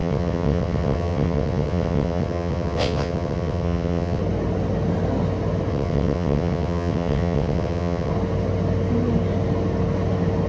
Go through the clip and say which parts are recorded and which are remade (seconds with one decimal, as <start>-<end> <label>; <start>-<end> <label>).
0.0-4.2 remade; 4.2-5.7 recorded; 5.7-8.1 remade; 8.1-10.5 recorded